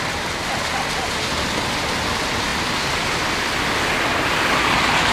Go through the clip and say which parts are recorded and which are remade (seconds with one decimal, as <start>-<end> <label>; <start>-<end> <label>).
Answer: 0.0-4.1 recorded; 4.1-4.6 remade; 4.6-5.1 recorded